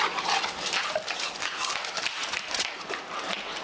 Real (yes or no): yes